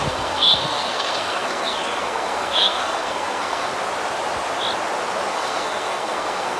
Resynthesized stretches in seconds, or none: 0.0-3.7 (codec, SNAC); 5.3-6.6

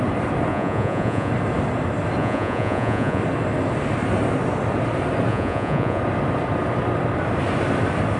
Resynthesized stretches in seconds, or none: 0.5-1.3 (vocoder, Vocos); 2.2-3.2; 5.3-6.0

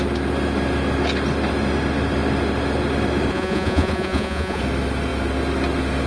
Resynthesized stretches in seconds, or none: 3.3-4.6 (vocoder, Vocos)